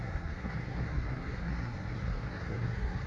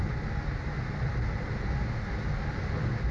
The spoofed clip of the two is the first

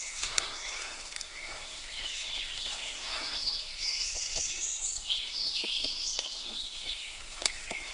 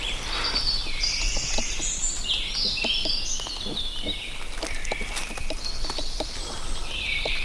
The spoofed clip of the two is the first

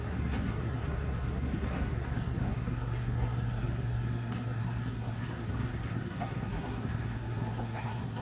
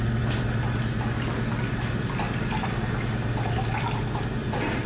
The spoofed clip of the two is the first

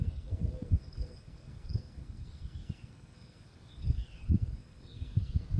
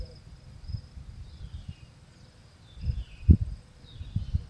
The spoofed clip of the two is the first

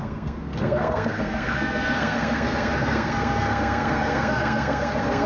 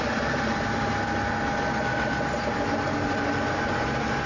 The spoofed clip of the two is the first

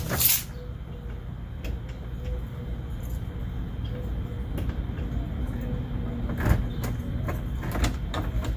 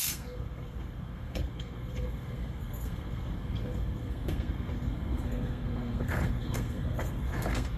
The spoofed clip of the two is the second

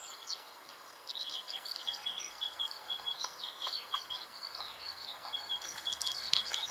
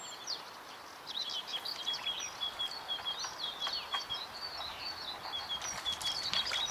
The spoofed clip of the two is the first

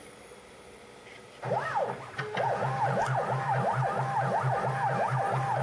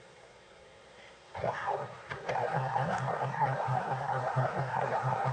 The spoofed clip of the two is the second